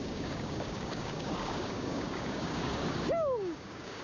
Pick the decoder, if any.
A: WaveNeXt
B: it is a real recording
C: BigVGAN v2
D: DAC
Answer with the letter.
D